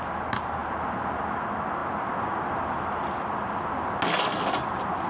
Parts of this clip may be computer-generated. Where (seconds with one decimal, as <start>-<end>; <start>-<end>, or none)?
none